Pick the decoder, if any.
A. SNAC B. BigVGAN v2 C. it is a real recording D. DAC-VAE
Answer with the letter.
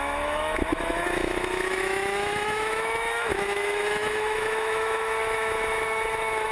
D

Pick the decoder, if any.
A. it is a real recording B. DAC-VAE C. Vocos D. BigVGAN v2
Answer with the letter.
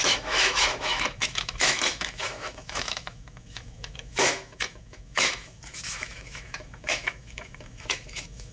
B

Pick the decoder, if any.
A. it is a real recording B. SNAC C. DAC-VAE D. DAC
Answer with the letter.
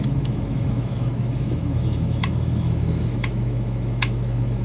C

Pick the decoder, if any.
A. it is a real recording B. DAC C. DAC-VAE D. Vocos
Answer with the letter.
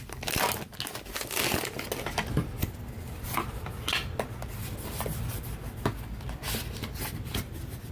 A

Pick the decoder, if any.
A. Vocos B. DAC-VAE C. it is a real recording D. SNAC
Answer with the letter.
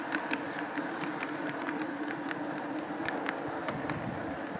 C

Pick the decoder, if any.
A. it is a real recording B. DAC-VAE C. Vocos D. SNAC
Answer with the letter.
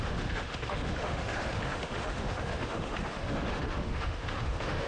B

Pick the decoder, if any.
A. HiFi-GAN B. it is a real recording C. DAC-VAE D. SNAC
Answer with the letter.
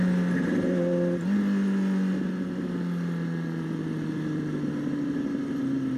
B